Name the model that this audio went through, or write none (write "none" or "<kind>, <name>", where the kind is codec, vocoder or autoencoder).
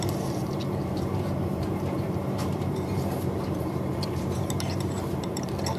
vocoder, BigVGAN v2